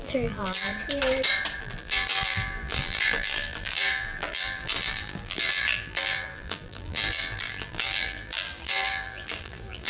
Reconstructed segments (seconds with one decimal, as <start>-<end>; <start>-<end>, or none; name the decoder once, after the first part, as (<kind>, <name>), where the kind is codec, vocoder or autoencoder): 0.0-0.7 (vocoder, BigVGAN v2); 1.6-9.9